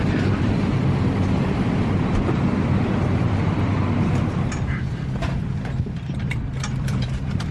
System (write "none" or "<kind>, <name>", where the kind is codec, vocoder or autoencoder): vocoder, BigVGAN v2